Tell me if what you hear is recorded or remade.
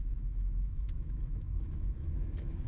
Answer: remade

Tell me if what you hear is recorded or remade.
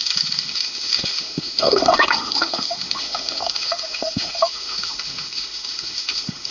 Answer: remade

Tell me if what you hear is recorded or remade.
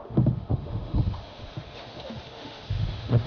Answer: remade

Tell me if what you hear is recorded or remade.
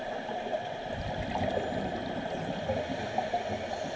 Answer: recorded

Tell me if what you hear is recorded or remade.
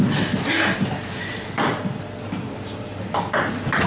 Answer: recorded